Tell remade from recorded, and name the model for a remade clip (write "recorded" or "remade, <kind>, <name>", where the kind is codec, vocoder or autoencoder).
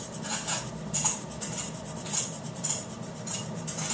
remade, vocoder, BigVGAN v2